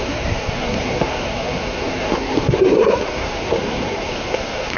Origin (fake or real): fake